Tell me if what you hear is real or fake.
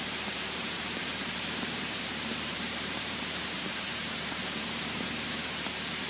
fake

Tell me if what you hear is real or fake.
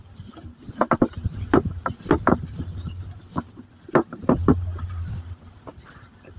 real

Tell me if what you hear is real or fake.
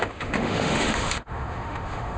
fake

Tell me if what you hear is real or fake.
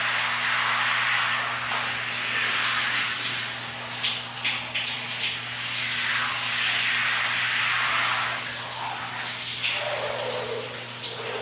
real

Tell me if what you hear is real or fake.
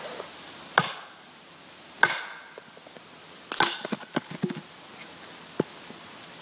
real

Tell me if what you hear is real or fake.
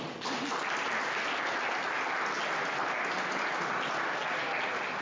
real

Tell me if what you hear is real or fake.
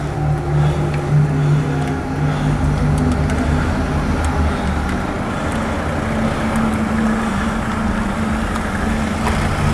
real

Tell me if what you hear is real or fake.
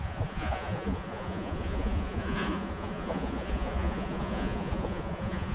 fake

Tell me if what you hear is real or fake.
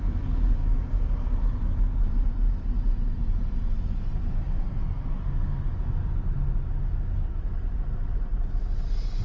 real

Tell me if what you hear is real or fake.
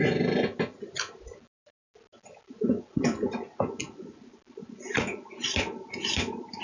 real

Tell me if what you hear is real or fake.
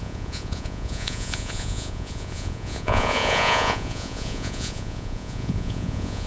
fake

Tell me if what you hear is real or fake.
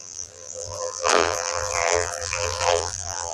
fake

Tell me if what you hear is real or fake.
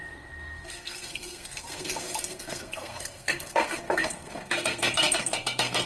fake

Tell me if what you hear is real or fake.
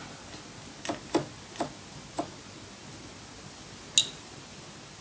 real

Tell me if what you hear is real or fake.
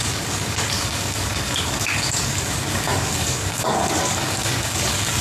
fake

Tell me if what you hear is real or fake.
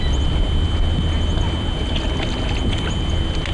real